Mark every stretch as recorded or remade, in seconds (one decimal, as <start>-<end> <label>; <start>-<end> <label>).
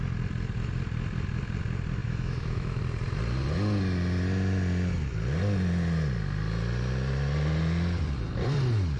0.0-2.0 recorded; 2.0-2.8 remade; 2.8-9.0 recorded